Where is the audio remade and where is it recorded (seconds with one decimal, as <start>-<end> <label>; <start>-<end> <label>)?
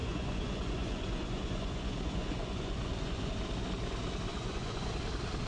0.0-3.3 remade; 3.3-4.3 recorded; 4.3-4.9 remade; 4.9-5.5 recorded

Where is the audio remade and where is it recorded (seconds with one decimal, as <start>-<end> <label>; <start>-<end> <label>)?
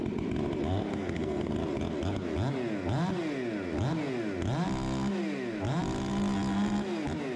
0.0-0.9 recorded; 0.9-1.5 remade; 1.5-7.4 recorded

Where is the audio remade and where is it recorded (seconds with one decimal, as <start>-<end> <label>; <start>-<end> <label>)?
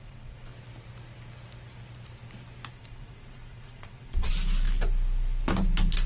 0.0-0.5 remade; 0.5-2.7 recorded; 2.7-4.3 remade; 4.3-6.1 recorded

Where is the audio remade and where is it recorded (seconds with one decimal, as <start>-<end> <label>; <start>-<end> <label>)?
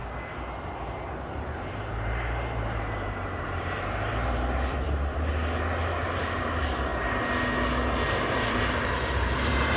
0.0-0.6 recorded; 0.6-5.3 remade; 5.3-6.0 recorded; 6.0-6.9 remade; 6.9-8.1 recorded; 8.1-9.8 remade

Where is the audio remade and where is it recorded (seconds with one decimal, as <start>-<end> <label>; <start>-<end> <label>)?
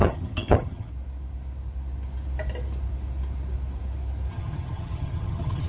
0.0-0.9 remade; 0.9-4.3 recorded; 4.3-5.7 remade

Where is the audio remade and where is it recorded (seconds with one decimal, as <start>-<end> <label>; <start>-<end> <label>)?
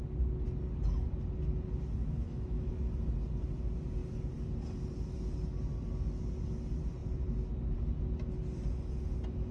0.0-2.0 recorded; 2.0-2.7 remade; 2.7-9.5 recorded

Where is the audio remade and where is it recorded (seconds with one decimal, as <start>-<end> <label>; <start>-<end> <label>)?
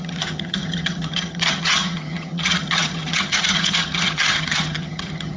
0.0-5.4 remade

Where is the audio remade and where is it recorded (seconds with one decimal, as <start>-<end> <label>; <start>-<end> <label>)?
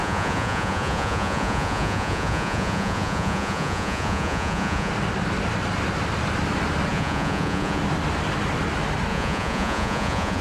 0.0-4.9 remade; 4.9-6.9 recorded; 6.9-7.8 remade; 7.8-9.1 recorded; 9.1-10.4 remade